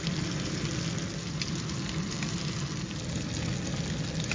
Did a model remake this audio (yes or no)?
no